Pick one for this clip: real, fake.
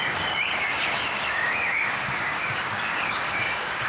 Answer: fake